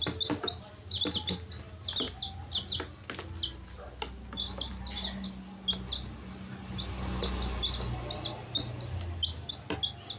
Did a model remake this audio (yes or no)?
no